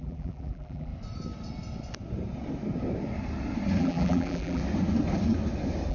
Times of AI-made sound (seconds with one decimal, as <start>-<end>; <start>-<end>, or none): 0.0-0.9; 3.8-4.6